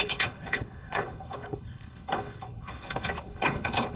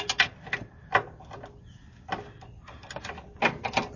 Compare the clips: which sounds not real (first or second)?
first